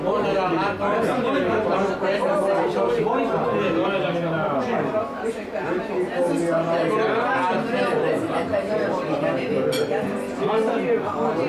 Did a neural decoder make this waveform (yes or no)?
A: no